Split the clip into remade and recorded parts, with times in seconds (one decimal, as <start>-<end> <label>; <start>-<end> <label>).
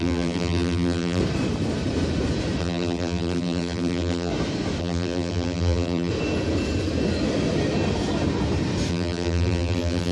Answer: 0.0-1.2 remade; 1.2-2.6 recorded; 2.6-4.3 remade; 4.3-4.8 recorded; 4.8-6.1 remade; 6.1-8.9 recorded; 8.9-10.1 remade